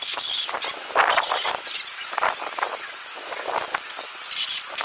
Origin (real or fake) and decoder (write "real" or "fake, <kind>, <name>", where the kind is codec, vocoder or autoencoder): real